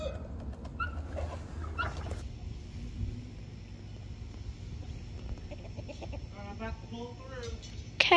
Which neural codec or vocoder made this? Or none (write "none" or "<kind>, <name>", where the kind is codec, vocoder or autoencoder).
none